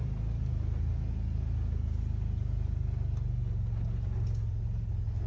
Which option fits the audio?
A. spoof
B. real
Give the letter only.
B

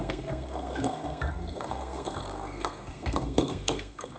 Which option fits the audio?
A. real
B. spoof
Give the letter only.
B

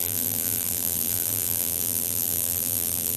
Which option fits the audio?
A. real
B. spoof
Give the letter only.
B